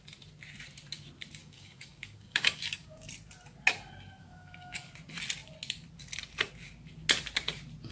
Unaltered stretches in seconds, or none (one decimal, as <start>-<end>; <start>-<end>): 0.0-1.4; 3.1-4.2; 4.9-7.9